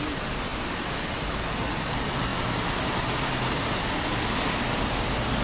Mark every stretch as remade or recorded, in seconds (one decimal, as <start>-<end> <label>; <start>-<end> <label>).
0.0-5.4 recorded